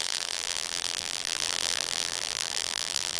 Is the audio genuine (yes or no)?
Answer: no